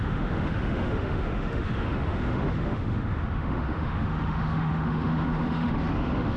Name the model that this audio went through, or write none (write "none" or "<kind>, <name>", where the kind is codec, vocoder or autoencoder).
autoencoder, DAC-VAE